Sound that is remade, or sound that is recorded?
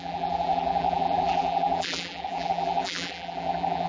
remade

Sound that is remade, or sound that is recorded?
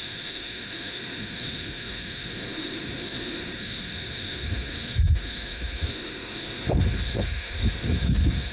remade